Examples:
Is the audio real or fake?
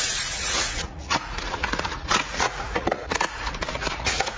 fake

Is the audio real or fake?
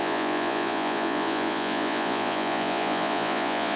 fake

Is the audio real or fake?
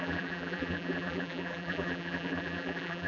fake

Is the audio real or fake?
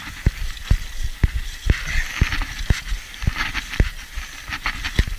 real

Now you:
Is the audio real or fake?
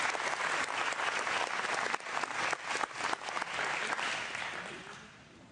real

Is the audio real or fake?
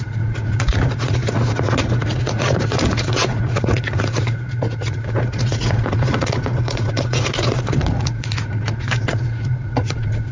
fake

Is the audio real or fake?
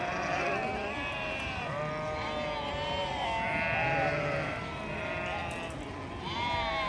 real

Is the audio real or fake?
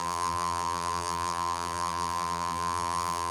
fake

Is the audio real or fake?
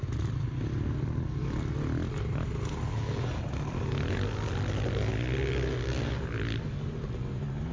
real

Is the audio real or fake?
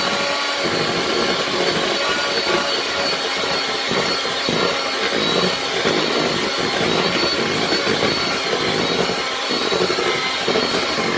real